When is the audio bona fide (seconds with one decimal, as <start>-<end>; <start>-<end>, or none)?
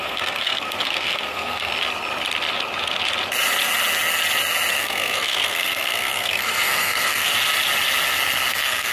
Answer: 1.7-4.7; 7.3-8.5